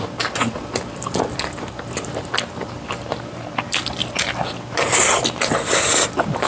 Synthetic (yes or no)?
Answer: no